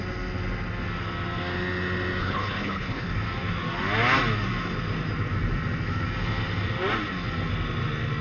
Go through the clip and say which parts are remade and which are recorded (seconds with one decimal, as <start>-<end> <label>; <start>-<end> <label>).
0.0-2.2 recorded; 2.2-3.1 remade; 3.1-8.2 recorded